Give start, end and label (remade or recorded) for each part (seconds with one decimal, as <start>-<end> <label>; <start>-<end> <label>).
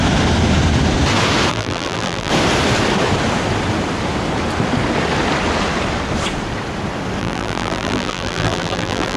0.0-1.5 recorded; 1.5-2.3 remade; 2.3-7.2 recorded; 7.2-9.2 remade